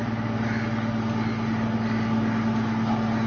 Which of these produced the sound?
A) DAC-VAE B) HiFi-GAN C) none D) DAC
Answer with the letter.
C